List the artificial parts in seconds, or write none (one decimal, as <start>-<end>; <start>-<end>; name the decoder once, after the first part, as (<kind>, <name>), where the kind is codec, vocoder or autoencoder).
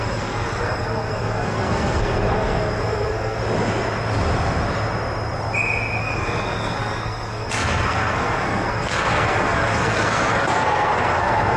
0.0-3.4 (codec, SNAC); 6.0-11.6